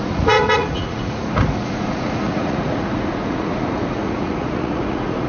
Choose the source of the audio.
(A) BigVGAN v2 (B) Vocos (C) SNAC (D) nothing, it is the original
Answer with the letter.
B